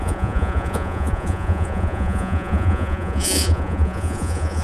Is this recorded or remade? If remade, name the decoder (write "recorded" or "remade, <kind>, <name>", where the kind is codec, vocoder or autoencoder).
remade, vocoder, Vocos